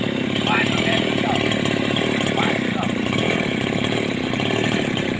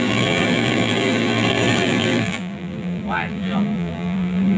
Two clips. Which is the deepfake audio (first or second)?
second